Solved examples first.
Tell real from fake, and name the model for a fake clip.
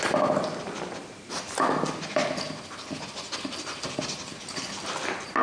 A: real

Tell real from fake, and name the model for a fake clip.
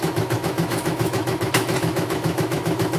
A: fake, autoencoder, DAC-VAE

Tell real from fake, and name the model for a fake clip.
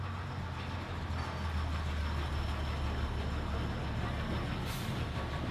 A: real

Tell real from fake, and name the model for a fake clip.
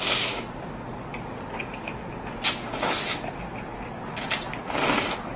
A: real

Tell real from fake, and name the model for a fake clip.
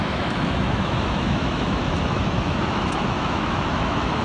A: fake, autoencoder, DAC-VAE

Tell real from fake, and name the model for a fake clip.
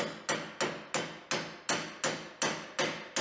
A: real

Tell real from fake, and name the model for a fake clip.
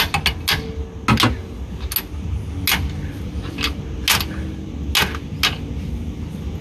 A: real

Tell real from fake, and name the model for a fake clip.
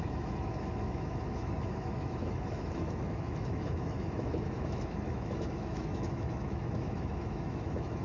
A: fake, autoencoder, DAC-VAE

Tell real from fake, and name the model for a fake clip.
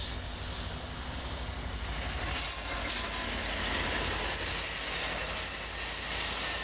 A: real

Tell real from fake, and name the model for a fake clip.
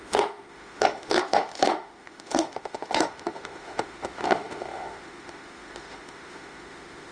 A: fake, autoencoder, DAC-VAE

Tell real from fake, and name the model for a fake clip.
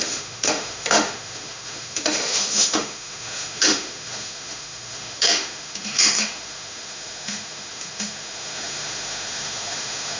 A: fake, autoencoder, DAC-VAE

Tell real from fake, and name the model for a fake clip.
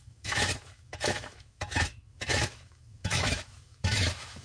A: fake, autoencoder, DAC-VAE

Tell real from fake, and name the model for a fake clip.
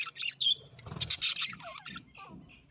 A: real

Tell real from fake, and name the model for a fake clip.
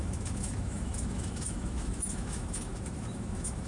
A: fake, autoencoder, DAC-VAE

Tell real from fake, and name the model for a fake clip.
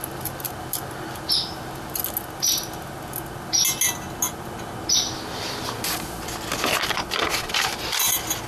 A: real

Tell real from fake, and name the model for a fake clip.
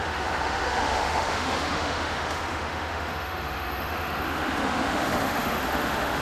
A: fake, autoencoder, DAC-VAE